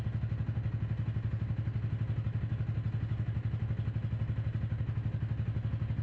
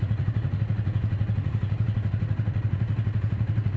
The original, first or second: first